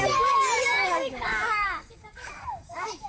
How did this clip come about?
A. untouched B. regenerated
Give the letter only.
B